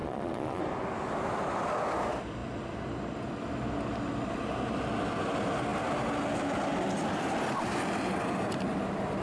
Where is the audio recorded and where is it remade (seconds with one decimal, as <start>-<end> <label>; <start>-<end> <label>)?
0.0-0.6 remade; 0.6-9.2 recorded